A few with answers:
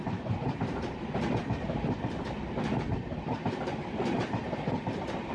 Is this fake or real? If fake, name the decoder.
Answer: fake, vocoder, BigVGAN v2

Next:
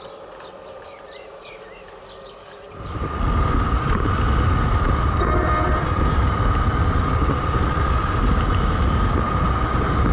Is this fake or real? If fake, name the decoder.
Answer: real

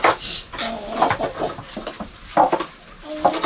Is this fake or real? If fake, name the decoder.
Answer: real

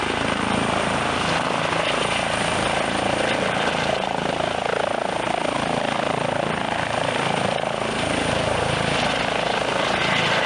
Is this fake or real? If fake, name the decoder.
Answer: real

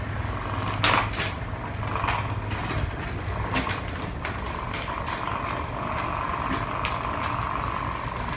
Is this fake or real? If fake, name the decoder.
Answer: real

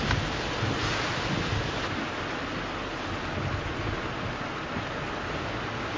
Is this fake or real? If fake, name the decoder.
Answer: real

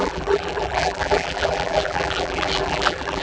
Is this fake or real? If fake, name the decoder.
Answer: fake, vocoder, BigVGAN v2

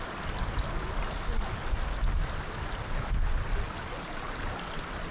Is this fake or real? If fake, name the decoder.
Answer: real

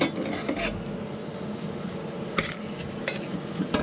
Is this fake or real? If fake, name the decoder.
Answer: real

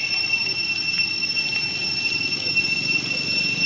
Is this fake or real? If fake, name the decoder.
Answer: real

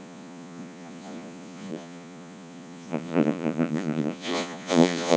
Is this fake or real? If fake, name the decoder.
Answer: fake, vocoder, Vocos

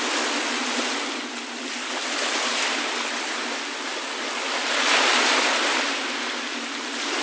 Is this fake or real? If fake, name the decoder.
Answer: real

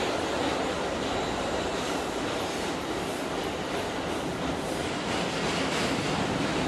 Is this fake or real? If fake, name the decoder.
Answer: real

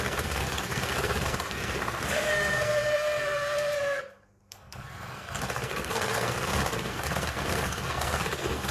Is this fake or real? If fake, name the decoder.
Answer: fake, codec, SNAC